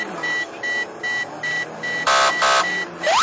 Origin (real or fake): real